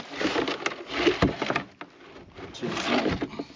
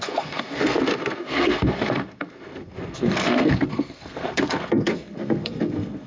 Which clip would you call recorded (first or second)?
first